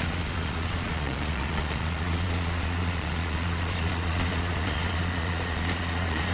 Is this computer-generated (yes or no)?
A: yes